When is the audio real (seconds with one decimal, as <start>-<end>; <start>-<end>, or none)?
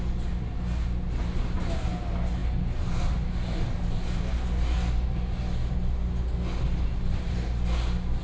0.0-8.2